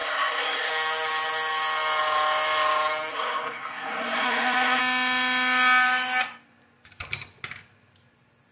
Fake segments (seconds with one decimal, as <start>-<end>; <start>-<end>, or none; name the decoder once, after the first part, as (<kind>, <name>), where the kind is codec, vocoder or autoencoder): 0.0-0.7 (codec, SNAC); 3.1-4.8